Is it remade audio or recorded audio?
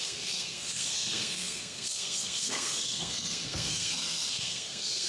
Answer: remade